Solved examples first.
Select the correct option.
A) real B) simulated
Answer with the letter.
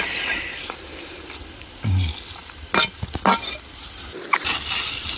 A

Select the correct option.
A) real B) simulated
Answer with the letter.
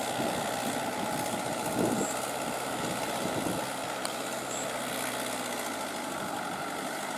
A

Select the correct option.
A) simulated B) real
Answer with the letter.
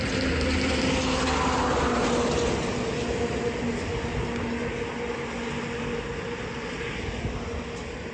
B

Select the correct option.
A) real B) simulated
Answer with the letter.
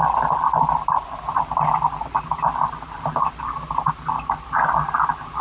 A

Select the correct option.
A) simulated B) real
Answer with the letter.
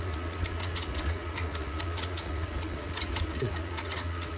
A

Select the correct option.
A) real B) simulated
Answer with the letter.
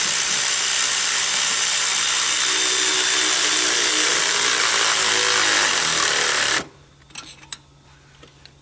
A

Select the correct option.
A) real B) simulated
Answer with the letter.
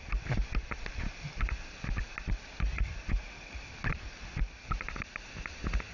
A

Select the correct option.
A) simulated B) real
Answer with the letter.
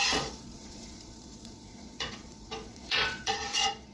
A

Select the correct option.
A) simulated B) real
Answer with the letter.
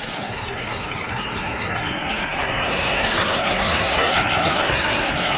A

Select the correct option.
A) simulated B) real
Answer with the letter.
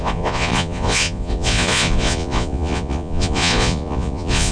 A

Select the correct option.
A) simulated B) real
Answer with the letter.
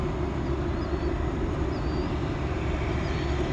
B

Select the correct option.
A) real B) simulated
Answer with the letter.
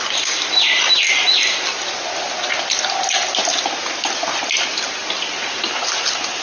A